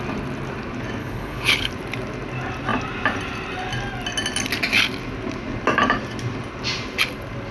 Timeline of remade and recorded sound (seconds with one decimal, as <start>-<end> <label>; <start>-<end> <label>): 0.0-1.0 recorded; 1.0-1.7 remade; 1.7-7.5 recorded